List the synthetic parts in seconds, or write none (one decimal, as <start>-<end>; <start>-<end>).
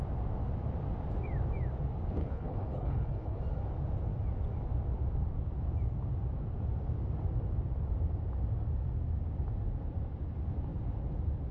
2.2-3.4